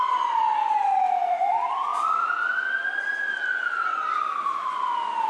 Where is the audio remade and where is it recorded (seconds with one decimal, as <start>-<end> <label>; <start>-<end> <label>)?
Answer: 0.0-5.3 recorded